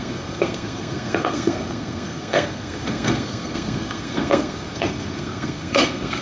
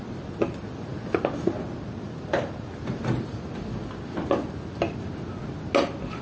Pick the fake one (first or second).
first